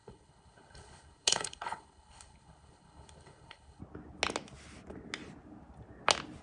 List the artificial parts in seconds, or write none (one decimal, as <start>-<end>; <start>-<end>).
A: 0.0-3.8